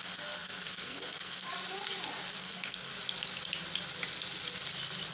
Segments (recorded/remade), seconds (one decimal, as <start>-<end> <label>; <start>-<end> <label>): 0.0-1.5 remade; 1.5-2.4 recorded; 2.4-2.9 remade; 2.9-5.1 recorded